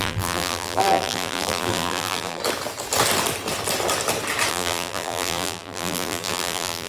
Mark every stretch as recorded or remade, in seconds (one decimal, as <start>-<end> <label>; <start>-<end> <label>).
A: 0.0-2.4 remade; 2.4-4.5 recorded; 4.5-6.9 remade